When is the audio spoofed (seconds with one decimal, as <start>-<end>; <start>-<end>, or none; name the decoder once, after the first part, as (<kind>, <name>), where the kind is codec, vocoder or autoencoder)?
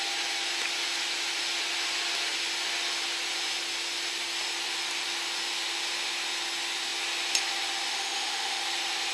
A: 7.9-8.6 (autoencoder, DAC-VAE)